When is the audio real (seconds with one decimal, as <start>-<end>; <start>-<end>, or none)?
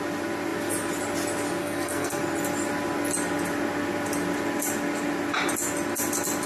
0.0-1.6; 2.2-6.5